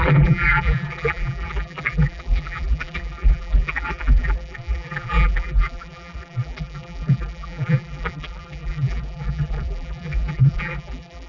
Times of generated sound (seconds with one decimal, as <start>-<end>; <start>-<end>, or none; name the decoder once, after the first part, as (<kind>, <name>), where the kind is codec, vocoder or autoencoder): 0.0-11.3 (vocoder, BigVGAN v2)